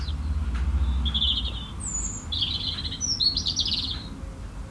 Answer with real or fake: real